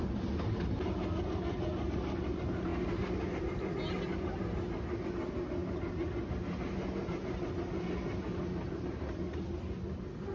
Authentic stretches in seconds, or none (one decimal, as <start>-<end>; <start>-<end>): 0.0-10.3